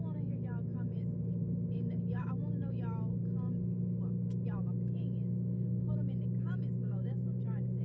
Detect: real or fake fake